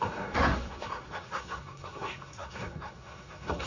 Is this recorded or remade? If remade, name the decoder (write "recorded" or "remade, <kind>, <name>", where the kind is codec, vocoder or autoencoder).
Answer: remade, codec, SNAC